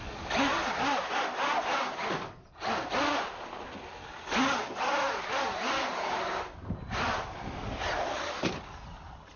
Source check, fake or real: real